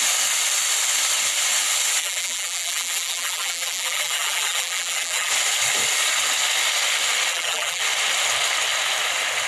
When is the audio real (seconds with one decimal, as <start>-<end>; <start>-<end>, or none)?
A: 0.0-2.0; 5.3-7.3; 7.8-9.5